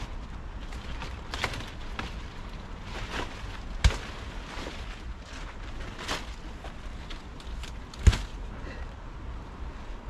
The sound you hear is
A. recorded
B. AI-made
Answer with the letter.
A